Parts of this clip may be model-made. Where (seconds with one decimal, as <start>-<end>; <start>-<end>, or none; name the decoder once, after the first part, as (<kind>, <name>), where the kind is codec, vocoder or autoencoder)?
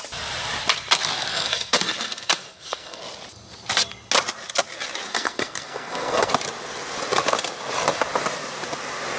1.3-3.0 (codec, SNAC); 5.1-6.3